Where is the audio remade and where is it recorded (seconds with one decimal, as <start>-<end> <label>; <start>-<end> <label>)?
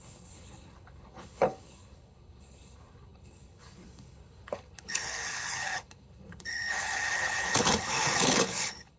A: 0.0-9.0 remade